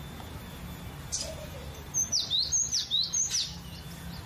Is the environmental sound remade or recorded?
recorded